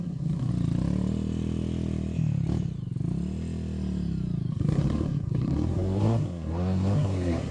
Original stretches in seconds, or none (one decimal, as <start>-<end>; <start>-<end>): 0.5-4.5